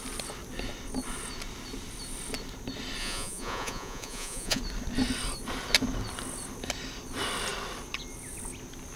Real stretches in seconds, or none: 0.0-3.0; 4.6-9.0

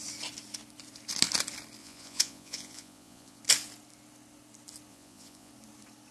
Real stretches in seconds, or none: 0.0-1.8; 3.4-4.9; 5.5-6.1

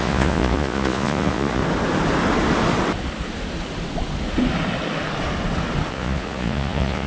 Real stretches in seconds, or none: 1.6-5.9

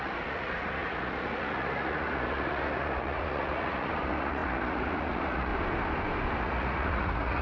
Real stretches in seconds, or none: 5.5-6.4

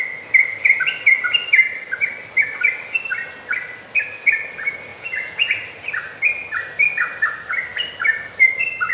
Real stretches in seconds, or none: 0.0-4.9; 5.5-8.9

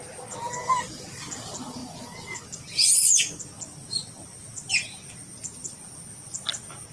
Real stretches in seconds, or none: 0.0-6.9

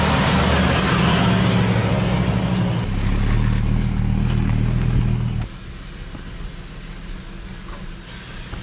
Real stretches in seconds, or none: 0.0-8.6